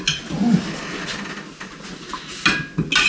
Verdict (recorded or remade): recorded